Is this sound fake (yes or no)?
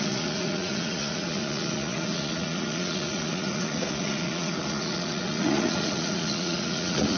yes